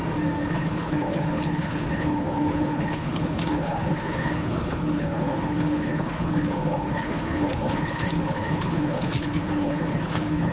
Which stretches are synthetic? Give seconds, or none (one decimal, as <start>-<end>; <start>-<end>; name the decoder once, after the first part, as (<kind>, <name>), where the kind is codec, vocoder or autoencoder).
0.5-10.5 (codec, HILCodec)